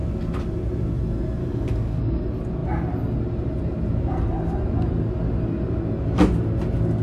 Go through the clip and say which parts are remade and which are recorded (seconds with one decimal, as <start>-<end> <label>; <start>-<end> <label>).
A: 0.0-1.4 recorded; 1.4-2.2 remade; 2.2-7.0 recorded

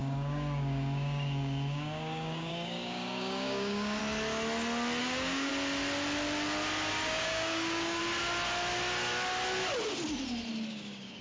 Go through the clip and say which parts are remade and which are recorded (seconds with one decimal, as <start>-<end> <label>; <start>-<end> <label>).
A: 0.0-4.0 remade; 4.0-5.0 recorded; 5.0-5.5 remade; 5.5-6.9 recorded; 6.9-8.0 remade; 8.0-10.7 recorded; 10.7-11.2 remade

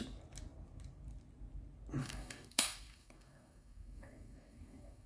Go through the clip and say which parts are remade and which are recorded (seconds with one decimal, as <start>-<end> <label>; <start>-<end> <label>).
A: 0.0-2.0 recorded; 2.0-5.1 remade